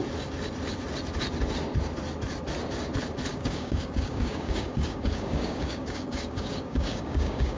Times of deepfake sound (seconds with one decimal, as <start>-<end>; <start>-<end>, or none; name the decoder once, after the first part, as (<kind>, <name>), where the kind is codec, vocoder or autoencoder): 3.3-7.6 (codec, DAC)

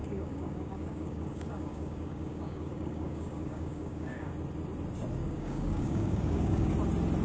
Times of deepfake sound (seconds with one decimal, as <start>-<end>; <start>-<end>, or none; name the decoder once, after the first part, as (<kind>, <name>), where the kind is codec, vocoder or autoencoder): 0.0-4.3 (codec, DAC); 5.2-6.7

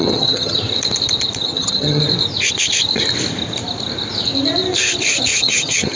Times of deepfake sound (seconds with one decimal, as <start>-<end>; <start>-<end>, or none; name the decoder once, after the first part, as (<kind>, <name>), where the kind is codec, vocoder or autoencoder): 0.0-0.6 (vocoder, HiFi-GAN); 1.4-2.0; 5.3-6.0

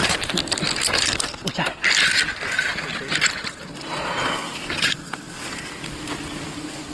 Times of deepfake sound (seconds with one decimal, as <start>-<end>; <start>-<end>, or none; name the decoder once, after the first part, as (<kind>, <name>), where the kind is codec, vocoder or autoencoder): none

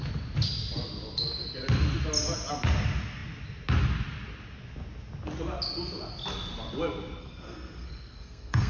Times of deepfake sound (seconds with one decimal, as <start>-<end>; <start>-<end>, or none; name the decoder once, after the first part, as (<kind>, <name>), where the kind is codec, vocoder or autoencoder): 7.2-8.7 (codec, SNAC)

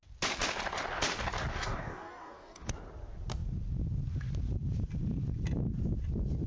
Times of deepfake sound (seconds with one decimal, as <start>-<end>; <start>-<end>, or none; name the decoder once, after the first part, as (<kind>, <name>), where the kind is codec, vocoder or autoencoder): 1.5-2.7 (codec, DAC)

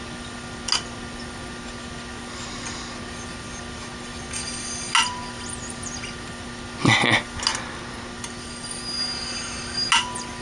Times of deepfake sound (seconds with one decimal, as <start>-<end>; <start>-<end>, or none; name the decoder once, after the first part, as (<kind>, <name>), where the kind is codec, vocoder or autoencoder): none

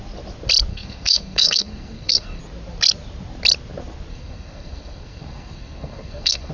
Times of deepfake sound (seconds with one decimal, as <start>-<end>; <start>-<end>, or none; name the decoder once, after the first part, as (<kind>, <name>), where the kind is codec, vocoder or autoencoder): 0.7-2.4 (codec, SNAC); 4.1-6.5